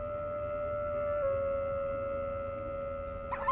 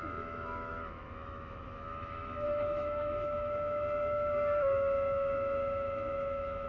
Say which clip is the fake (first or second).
second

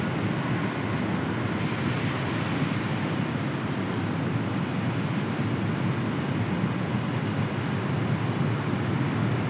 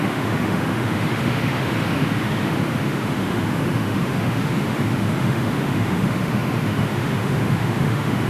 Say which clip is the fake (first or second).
second